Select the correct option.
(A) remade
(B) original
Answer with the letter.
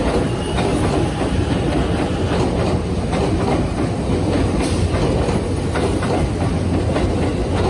B